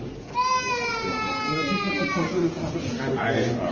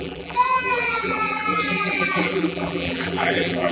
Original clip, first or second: first